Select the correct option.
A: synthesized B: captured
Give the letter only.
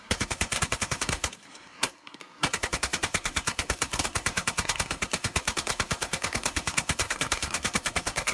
A